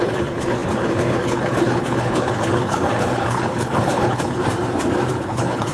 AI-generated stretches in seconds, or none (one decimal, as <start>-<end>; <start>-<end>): 0.0-4.4; 5.1-5.7